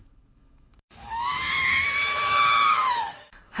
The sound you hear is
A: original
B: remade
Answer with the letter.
B